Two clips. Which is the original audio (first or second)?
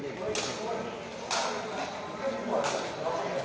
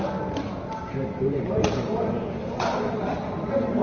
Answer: first